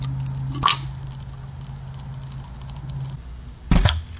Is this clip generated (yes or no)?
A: no